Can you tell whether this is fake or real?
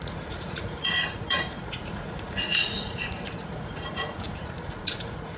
fake